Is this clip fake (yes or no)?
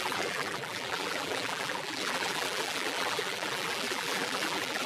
yes